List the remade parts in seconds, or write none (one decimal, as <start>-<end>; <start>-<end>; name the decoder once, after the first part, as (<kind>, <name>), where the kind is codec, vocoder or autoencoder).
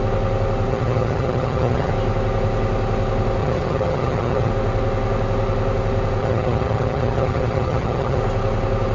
0.7-1.9 (vocoder, HiFi-GAN); 3.4-4.5; 6.2-8.2